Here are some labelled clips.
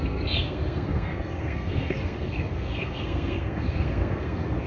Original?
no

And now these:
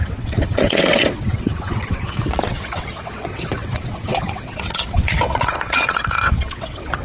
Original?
no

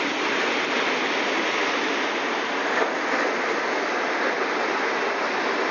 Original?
yes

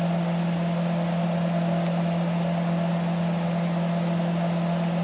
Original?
yes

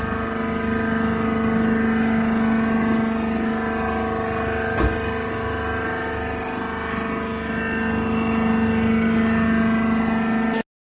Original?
yes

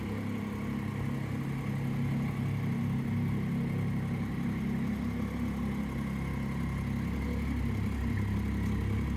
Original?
yes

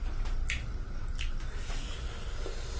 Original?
yes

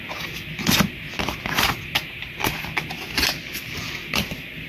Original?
yes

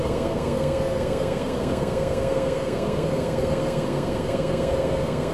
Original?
no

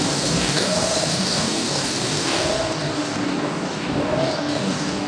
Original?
no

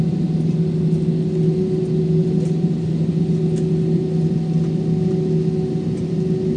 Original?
yes